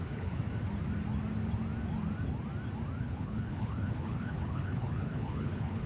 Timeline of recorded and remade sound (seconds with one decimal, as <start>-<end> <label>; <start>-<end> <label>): 0.0-0.4 remade; 0.4-3.0 recorded; 3.0-5.9 remade